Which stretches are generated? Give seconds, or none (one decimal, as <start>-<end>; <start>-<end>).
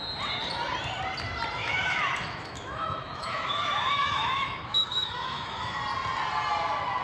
1.6-5.8